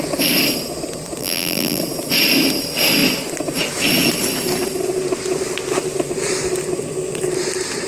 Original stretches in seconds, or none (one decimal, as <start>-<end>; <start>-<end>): 0.0-1.2; 1.8-7.9